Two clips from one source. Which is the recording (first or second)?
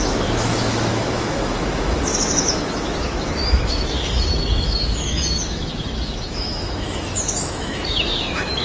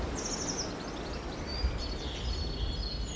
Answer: second